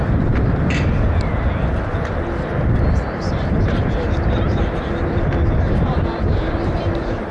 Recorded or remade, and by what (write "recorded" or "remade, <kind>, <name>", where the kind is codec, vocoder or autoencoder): remade, vocoder, BigVGAN v2